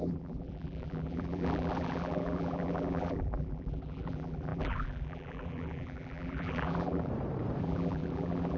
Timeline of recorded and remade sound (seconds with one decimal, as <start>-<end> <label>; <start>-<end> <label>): 0.0-7.1 remade; 7.1-7.6 recorded; 7.6-8.6 remade